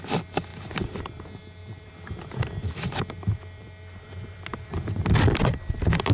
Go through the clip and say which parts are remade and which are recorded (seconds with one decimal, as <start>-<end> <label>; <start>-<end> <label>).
0.0-0.5 recorded; 0.5-1.2 remade; 1.2-1.6 recorded; 1.6-5.3 remade; 5.3-6.1 recorded